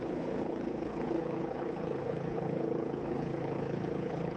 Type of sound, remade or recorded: remade